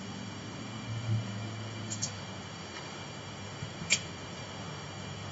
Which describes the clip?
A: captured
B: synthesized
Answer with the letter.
B